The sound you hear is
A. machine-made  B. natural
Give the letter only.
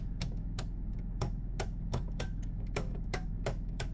A